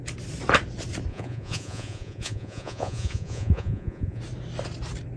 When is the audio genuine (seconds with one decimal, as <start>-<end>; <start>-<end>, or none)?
0.0-1.1; 4.2-5.2